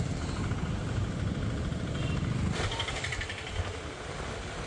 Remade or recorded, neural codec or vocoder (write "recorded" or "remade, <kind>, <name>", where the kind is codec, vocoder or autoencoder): recorded